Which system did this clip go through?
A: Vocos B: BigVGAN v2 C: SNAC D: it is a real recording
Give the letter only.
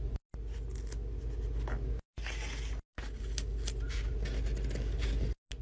D